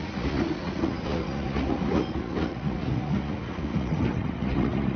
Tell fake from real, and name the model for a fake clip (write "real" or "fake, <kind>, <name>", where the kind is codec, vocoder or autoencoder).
fake, vocoder, Vocos